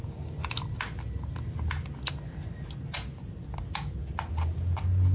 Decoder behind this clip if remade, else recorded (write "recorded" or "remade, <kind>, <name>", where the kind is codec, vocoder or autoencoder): recorded